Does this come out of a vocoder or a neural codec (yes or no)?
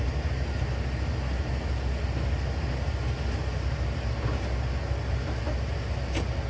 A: no